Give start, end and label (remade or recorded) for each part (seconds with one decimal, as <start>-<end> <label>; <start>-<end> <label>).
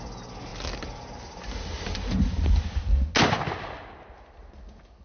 0.0-5.0 recorded